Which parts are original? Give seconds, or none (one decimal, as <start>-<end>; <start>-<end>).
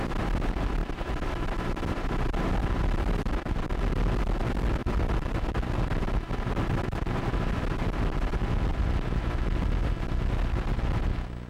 0.0-0.8; 3.7-4.8; 5.5-8.7; 9.3-11.5